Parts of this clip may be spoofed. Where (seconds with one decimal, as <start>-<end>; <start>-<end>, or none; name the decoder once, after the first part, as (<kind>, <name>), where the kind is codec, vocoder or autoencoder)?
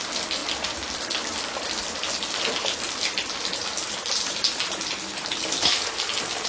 none